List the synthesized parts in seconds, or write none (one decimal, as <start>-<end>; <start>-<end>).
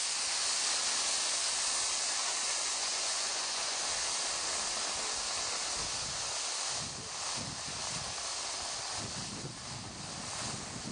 2.7-3.8